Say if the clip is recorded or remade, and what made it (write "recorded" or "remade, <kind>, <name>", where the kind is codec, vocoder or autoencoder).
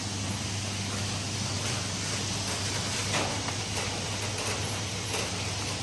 recorded